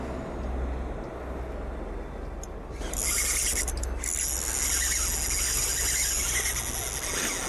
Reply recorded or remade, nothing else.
recorded